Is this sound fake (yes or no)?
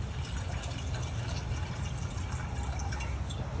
no